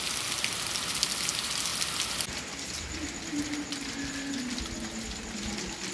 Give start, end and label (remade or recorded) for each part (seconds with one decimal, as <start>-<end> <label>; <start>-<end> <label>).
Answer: 0.0-5.9 recorded